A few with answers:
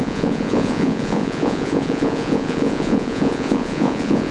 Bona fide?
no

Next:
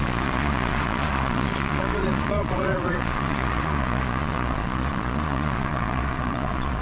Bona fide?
no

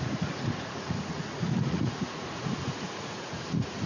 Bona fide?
no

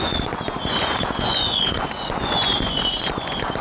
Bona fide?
no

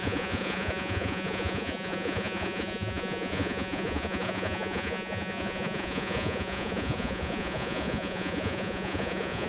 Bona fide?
no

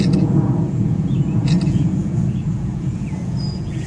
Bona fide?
no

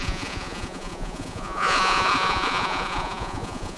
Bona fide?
no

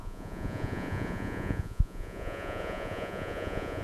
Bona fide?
no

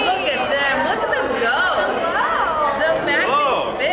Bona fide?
yes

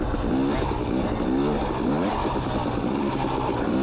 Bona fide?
yes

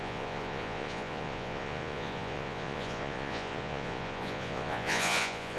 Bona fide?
no